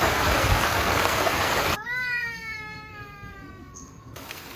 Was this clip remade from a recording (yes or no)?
yes